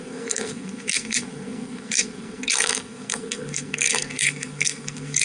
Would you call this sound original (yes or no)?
no